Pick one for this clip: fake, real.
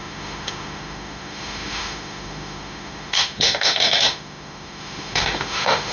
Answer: fake